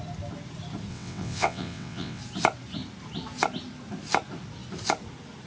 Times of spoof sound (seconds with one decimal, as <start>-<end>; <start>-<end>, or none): 0.9-2.2